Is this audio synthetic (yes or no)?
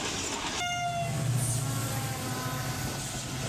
no